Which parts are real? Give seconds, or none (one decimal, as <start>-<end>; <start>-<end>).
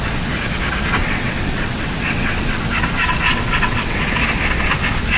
0.0-1.0; 2.6-3.3; 4.0-5.2